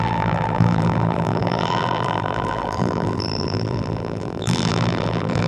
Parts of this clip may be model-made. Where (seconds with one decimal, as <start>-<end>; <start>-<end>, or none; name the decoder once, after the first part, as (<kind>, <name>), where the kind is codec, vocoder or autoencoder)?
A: 0.0-5.5 (vocoder, BigVGAN v2)